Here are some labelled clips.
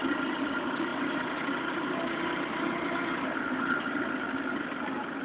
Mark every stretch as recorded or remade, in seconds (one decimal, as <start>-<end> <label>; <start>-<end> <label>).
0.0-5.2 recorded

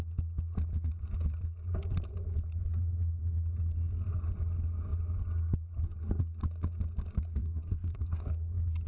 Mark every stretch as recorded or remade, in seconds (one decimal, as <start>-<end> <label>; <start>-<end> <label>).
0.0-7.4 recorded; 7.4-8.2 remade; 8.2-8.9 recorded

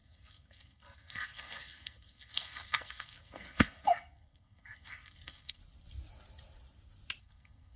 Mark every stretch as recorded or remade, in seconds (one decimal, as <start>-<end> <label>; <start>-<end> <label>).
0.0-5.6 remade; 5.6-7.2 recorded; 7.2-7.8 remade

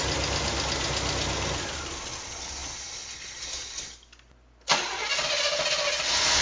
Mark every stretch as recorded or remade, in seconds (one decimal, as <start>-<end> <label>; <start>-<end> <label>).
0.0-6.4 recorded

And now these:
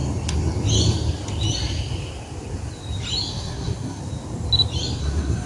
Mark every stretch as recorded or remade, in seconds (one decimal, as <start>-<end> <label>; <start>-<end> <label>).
0.0-3.3 recorded; 3.3-4.0 remade; 4.0-5.0 recorded; 5.0-5.5 remade

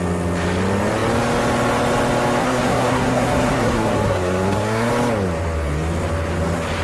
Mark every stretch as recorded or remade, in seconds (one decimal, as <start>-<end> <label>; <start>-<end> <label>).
0.0-2.4 recorded; 2.4-4.9 remade; 4.9-6.8 recorded

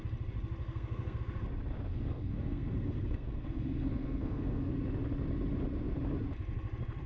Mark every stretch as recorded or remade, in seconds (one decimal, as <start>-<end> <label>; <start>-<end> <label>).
0.0-0.6 recorded; 0.6-1.2 remade; 1.2-1.9 recorded; 1.9-4.7 remade; 4.7-7.1 recorded